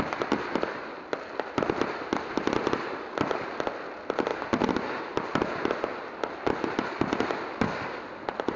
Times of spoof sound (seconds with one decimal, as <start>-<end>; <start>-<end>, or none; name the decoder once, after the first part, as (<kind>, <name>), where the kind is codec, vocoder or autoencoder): none